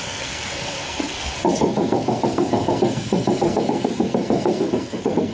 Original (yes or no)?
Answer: no